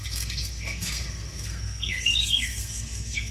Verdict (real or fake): fake